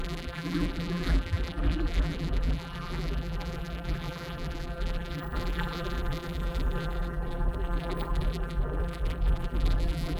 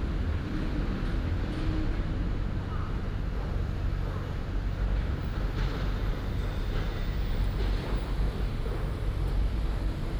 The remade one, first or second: first